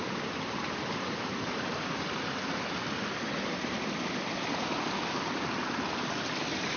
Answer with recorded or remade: remade